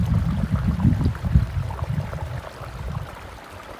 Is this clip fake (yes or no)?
no